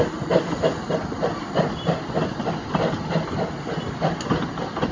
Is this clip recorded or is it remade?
recorded